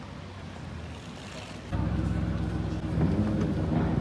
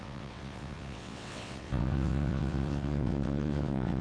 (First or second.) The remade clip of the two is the second